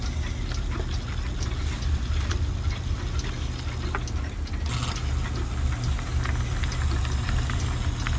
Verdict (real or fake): real